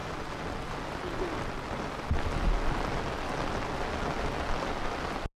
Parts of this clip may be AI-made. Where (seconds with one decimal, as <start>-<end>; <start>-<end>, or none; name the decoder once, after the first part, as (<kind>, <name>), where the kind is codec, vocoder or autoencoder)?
none